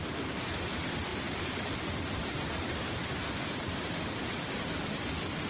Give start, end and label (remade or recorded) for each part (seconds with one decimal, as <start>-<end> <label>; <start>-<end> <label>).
0.0-1.1 remade; 1.1-4.4 recorded; 4.4-5.5 remade